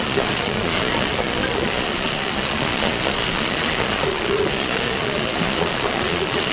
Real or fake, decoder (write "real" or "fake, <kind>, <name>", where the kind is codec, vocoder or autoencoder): fake, vocoder, Vocos